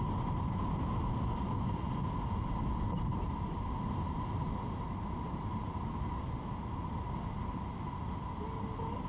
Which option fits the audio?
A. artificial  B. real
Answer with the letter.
B